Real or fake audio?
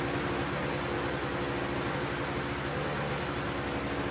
real